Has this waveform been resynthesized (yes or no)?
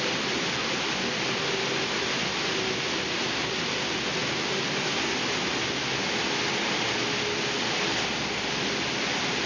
no